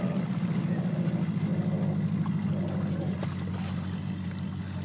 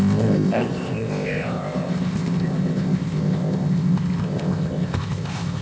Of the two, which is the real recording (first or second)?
first